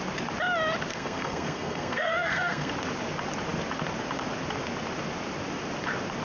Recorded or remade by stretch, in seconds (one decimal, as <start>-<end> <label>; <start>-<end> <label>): 0.0-0.9 recorded; 0.9-2.7 remade; 2.7-6.2 recorded